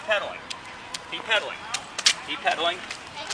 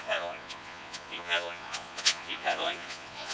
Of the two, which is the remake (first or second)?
second